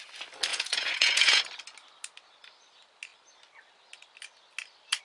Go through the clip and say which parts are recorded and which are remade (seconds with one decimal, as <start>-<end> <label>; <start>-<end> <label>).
0.0-0.5 recorded; 0.5-1.4 remade; 1.4-5.0 recorded